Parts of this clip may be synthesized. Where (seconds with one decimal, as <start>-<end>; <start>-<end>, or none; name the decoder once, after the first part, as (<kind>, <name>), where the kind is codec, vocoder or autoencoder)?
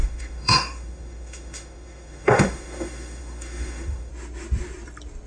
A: 0.0-4.1 (autoencoder, DAC-VAE)